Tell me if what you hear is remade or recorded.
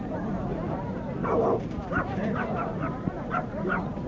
remade